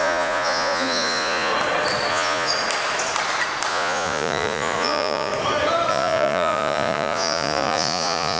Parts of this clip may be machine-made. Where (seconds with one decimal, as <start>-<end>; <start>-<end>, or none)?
0.0-1.5; 2.1-2.5; 3.7-5.3; 5.9-8.4